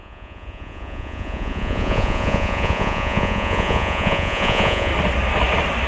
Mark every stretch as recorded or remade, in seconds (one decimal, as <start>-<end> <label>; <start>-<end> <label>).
0.0-4.9 remade; 4.9-5.9 recorded